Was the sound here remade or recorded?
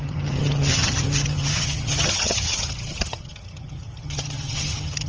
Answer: remade